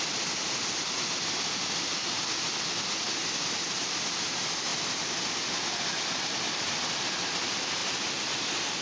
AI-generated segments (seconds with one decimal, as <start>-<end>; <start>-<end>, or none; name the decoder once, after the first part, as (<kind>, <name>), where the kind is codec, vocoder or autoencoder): none